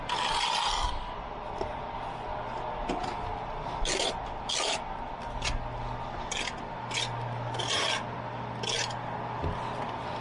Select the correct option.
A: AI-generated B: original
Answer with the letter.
B